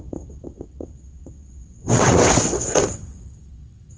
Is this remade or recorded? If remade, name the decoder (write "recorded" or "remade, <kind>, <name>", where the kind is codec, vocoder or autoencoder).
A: remade, vocoder, WaveNeXt